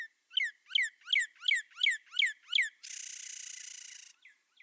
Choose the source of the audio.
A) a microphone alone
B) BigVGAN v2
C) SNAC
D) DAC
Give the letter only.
A